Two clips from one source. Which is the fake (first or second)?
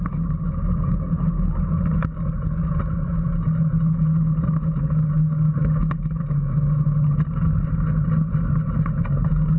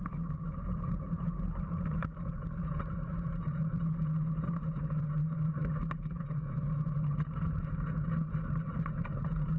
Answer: second